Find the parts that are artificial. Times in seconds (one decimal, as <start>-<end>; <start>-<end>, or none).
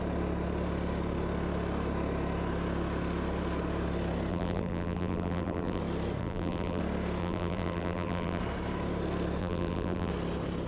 4.3-5.8; 6.2-6.8; 7.2-8.4; 9.4-10.1